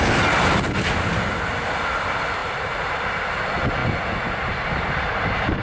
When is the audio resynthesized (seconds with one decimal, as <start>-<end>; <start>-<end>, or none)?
2.4-3.0; 3.8-5.6

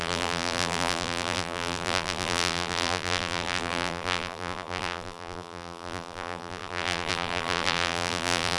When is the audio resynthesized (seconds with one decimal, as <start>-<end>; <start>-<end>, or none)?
0.0-8.6

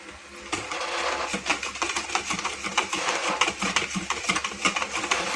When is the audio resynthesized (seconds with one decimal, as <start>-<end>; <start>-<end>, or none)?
1.5-4.5

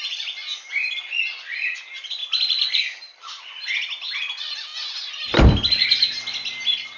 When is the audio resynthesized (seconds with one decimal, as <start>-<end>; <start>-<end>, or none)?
0.0-2.2; 3.0-4.7

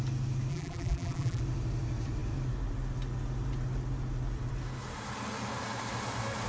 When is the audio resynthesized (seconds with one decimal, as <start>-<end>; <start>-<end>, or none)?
0.5-1.4